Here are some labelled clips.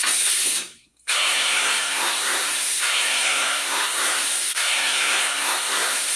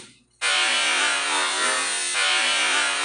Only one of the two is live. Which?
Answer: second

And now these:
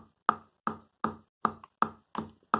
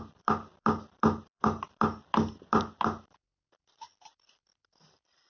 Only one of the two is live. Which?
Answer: first